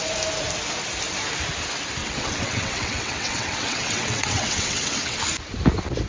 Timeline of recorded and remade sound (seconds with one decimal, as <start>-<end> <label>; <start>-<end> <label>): 0.0-2.0 recorded; 2.0-5.2 remade; 5.2-6.1 recorded